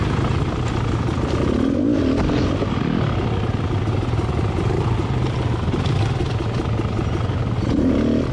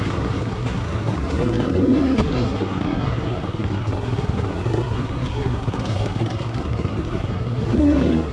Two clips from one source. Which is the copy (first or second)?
second